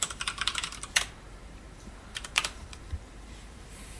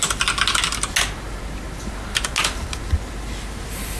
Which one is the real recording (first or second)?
second